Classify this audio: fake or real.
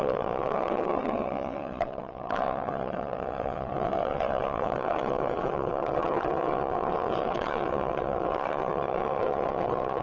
fake